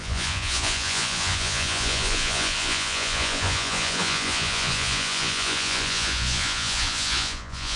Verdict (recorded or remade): remade